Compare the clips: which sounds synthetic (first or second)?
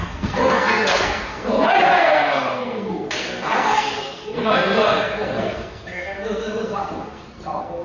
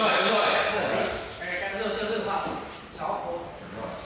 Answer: first